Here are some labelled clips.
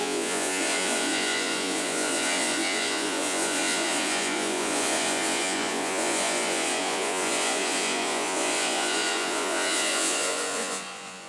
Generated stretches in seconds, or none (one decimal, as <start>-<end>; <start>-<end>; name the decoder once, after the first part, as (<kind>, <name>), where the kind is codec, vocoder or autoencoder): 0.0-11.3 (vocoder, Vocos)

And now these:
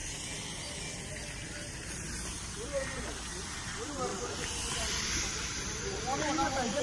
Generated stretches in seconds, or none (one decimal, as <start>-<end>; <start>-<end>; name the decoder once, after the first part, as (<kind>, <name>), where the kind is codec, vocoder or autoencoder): 4.1-6.8 (vocoder, BigVGAN v2)

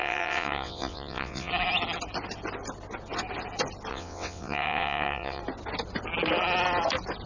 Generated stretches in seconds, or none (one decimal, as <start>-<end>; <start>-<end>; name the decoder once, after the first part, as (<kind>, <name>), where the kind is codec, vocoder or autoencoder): 0.0-1.5 (vocoder, WaveNeXt); 3.9-5.4

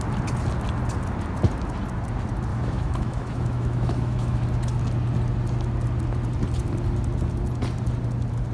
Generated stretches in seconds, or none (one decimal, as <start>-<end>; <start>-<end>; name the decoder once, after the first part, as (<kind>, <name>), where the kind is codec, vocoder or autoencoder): 2.5-4.4 (autoencoder, DAC-VAE)

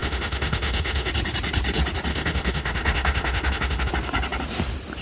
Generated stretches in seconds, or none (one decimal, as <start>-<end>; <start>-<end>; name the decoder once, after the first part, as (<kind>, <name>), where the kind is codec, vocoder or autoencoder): 0.0-1.1 (autoencoder, DAC-VAE); 2.1-3.9